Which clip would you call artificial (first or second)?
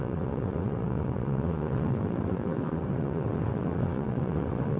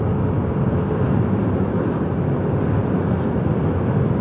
first